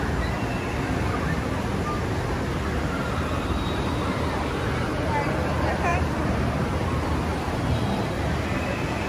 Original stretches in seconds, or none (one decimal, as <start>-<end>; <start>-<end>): 0.0-2.5; 4.8-5.9; 6.6-7.3